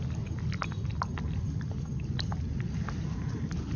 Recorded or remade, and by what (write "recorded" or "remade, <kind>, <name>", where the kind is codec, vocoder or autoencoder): recorded